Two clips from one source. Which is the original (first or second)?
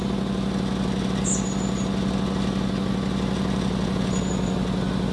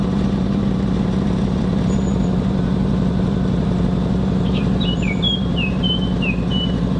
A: first